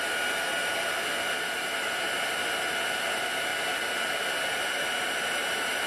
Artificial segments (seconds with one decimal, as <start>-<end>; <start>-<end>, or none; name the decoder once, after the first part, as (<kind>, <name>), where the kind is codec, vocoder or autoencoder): none